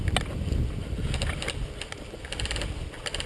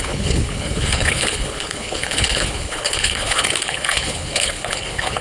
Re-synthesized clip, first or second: second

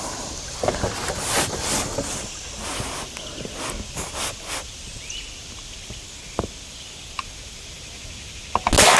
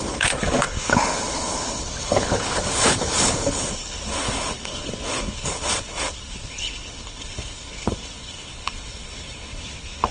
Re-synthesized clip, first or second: second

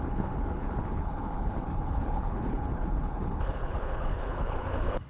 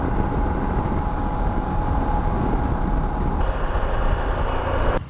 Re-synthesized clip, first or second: first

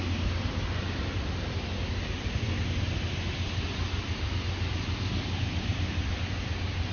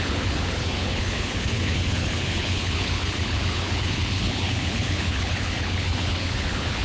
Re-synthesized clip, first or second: second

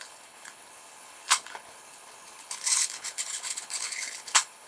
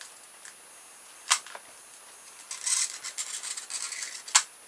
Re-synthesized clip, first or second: first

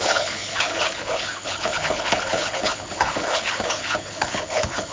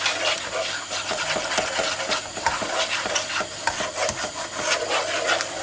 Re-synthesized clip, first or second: first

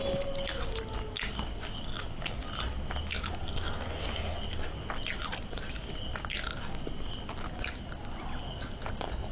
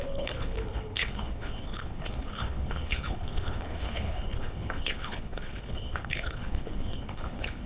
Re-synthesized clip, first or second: second